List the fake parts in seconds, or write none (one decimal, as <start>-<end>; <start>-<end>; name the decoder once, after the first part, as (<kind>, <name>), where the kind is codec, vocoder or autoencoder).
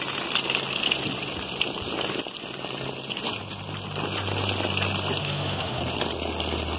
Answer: 5.2-5.8 (autoencoder, DAC-VAE)